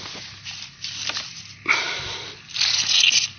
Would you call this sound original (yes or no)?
yes